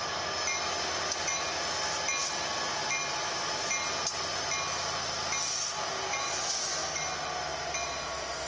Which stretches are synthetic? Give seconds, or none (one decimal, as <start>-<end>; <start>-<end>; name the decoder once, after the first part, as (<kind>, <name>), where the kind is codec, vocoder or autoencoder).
none